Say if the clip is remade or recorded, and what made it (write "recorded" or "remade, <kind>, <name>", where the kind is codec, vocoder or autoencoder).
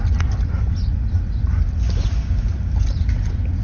recorded